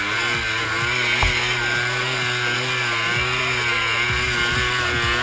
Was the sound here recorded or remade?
recorded